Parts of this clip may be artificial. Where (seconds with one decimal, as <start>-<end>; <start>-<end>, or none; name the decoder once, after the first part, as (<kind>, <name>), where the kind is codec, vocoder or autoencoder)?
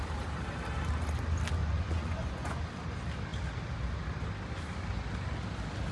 1.6-2.6 (vocoder, Vocos)